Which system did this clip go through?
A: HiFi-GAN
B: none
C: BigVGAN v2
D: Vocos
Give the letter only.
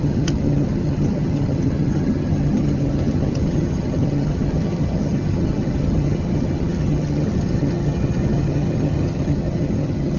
A